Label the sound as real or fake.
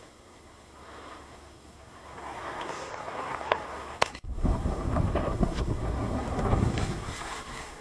fake